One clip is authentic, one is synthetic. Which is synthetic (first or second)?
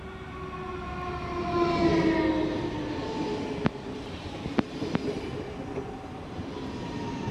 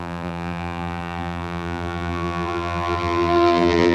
second